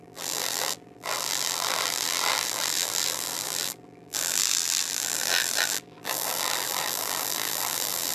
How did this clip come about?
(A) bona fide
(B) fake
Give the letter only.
B